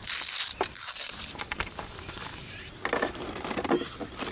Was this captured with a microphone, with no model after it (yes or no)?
no